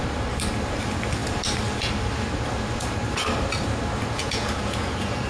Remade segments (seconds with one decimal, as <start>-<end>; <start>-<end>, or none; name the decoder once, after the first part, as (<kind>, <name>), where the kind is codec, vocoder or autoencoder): 4.2-5.3 (vocoder, Vocos)